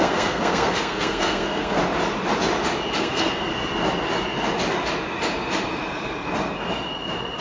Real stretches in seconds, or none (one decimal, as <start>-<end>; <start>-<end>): 1.8-3.0; 3.5-7.4